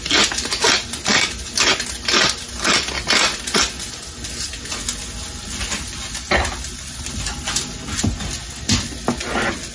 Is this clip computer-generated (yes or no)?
no